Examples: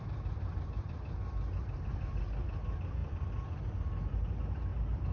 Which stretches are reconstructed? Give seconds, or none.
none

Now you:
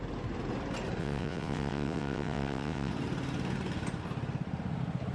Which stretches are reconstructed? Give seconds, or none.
1.0-2.9 (vocoder, WaveNeXt)

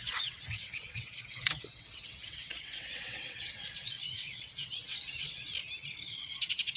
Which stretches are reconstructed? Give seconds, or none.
0.0-5.5 (vocoder, WaveNeXt); 6.1-6.8

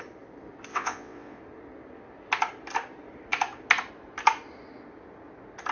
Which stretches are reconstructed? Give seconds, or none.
0.7-1.4 (vocoder, WaveNeXt)

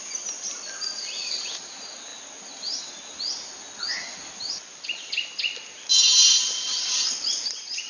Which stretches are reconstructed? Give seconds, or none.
none